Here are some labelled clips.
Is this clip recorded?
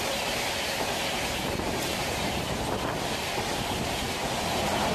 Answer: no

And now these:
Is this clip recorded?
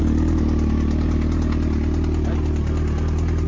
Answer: yes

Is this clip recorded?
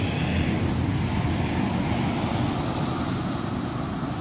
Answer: yes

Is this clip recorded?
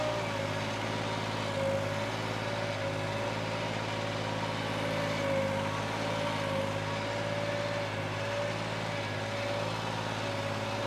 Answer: yes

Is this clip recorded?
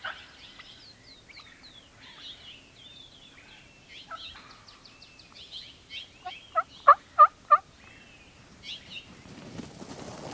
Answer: yes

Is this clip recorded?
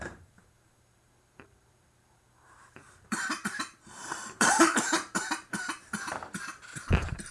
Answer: no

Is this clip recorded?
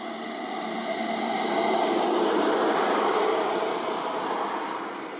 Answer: no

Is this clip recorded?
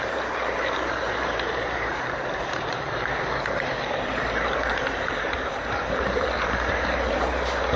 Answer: no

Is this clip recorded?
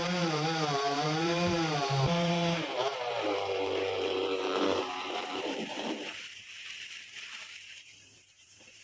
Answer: no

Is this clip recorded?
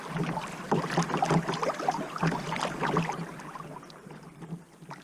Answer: yes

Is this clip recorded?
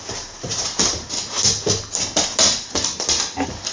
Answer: yes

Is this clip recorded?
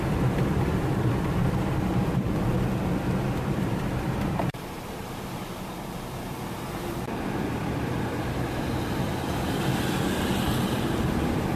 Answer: no